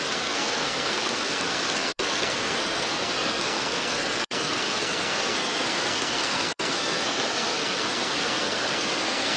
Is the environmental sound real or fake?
fake